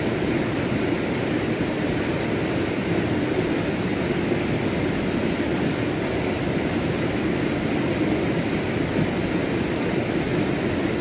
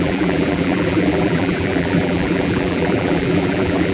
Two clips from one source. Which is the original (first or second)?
first